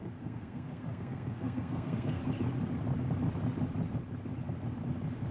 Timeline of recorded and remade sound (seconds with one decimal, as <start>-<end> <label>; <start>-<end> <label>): 0.0-2.2 remade; 2.2-5.3 recorded